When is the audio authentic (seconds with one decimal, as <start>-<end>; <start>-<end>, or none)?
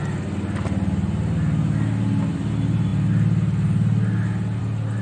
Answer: 0.0-5.0